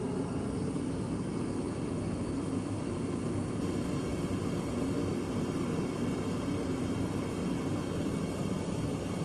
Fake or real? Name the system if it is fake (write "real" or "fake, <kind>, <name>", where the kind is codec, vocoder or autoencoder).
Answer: real